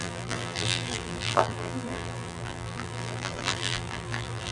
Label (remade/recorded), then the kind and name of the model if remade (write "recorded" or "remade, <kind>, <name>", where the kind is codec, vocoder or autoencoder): remade, vocoder, BigVGAN v2